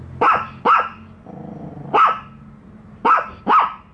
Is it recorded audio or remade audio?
recorded